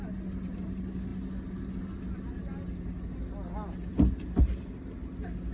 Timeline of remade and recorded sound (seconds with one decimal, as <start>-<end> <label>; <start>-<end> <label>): 0.0-5.5 recorded